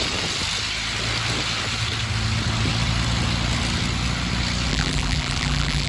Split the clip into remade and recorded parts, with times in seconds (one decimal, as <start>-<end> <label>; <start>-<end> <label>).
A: 0.0-4.7 recorded; 4.7-5.9 remade